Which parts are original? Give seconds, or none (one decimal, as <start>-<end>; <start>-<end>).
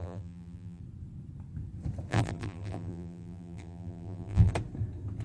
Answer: 0.8-2.1; 4.5-5.2